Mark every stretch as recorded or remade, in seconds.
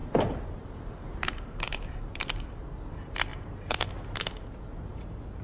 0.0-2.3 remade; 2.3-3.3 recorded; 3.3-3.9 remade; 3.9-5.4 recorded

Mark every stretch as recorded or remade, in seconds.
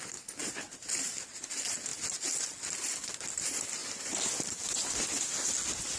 0.0-3.8 recorded; 3.8-5.3 remade; 5.3-6.0 recorded